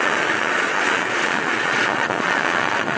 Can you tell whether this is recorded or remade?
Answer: remade